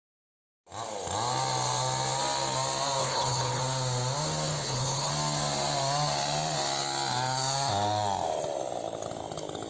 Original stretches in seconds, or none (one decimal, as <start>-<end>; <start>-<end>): 0.0-3.0; 3.6-4.5; 5.1-9.7